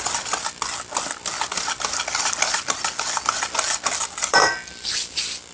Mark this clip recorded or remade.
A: remade